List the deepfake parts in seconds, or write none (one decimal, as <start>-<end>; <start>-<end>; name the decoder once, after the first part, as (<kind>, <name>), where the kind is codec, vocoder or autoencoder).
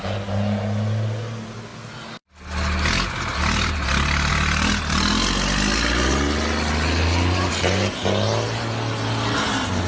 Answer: none